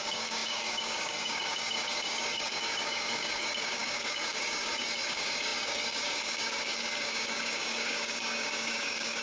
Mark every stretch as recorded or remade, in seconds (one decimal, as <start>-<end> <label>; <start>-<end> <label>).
0.0-9.2 remade